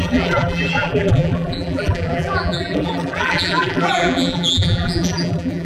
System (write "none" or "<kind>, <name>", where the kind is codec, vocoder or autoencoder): vocoder, BigVGAN v2